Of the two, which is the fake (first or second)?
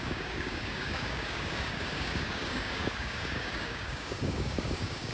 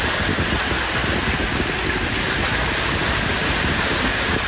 first